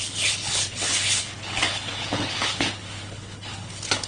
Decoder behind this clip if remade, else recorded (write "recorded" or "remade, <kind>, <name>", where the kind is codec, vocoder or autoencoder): remade, codec, HILCodec